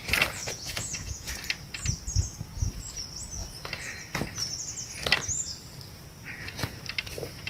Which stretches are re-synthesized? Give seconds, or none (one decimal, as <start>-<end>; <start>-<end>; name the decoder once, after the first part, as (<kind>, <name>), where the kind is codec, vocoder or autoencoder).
0.4-1.3 (vocoder, Vocos)